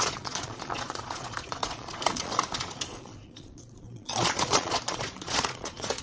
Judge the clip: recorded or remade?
remade